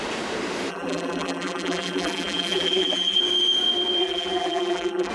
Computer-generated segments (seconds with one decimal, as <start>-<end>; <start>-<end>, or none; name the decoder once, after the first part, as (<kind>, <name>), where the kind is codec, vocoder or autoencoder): 0.7-3.2 (vocoder, BigVGAN v2); 4.0-5.1